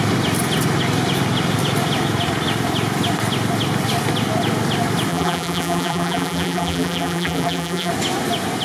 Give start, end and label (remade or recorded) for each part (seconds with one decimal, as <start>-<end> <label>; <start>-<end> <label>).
0.0-5.1 recorded; 5.1-7.9 remade; 7.9-8.6 recorded